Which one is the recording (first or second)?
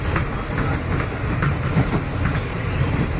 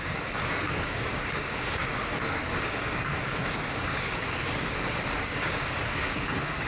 first